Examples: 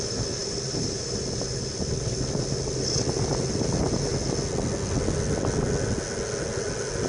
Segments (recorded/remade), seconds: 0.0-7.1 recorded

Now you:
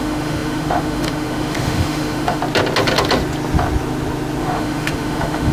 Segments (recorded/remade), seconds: 0.0-2.4 remade; 2.4-4.4 recorded; 4.4-5.5 remade

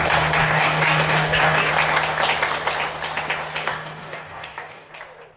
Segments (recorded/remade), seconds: 0.0-0.4 recorded; 0.4-1.7 remade; 1.7-3.6 recorded; 3.6-4.9 remade; 4.9-5.4 recorded

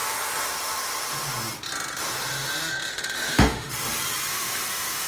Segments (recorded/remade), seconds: 0.0-2.9 recorded; 2.9-3.7 remade; 3.7-4.3 recorded; 4.3-5.1 remade